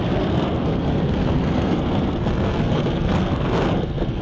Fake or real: fake